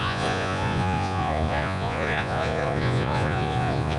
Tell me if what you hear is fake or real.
fake